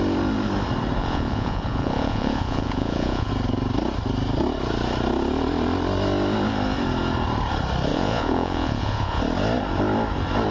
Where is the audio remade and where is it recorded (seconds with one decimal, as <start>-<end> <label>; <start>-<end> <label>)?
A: 0.0-1.0 recorded; 1.0-3.3 remade; 3.3-7.9 recorded; 7.9-9.2 remade; 9.2-10.5 recorded